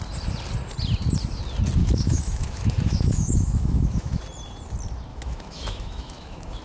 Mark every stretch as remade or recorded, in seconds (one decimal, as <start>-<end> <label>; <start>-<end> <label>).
0.0-1.8 recorded; 1.8-4.2 remade; 4.2-5.1 recorded; 5.1-6.6 remade

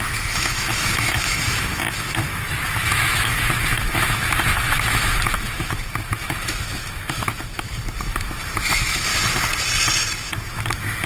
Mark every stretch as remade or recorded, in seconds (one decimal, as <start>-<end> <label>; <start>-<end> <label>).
0.0-9.1 remade; 9.1-10.3 recorded; 10.3-11.1 remade

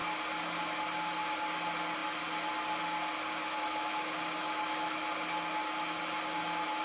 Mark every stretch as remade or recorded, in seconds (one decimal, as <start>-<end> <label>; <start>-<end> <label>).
0.0-3.4 recorded; 3.4-5.0 remade; 5.0-6.8 recorded

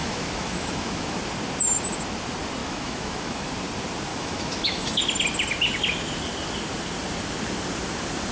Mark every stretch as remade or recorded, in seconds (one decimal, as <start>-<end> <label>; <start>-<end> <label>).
0.0-1.2 remade; 1.2-2.6 recorded; 2.6-3.5 remade; 3.5-4.1 recorded; 4.1-5.0 remade; 5.0-8.3 recorded

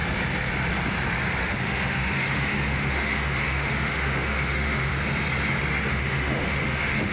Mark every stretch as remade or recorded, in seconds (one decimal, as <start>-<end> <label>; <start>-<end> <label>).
0.0-1.4 recorded; 1.4-4.9 remade; 4.9-5.9 recorded; 5.9-7.1 remade

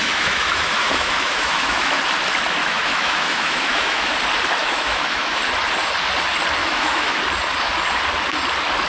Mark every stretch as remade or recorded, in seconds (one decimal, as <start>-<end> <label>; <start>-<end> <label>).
0.0-2.0 remade; 2.0-2.6 recorded; 2.6-4.1 remade; 4.1-4.6 recorded; 4.6-5.4 remade; 5.4-6.6 recorded; 6.6-7.2 remade; 7.2-8.9 recorded

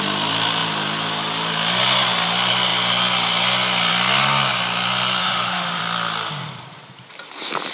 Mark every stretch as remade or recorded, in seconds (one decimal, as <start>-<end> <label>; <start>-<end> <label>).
0.0-5.2 recorded; 5.2-5.8 remade; 5.8-7.7 recorded